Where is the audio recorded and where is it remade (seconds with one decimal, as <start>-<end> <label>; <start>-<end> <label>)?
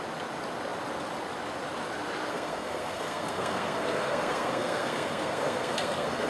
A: 0.0-2.3 recorded; 2.3-6.3 remade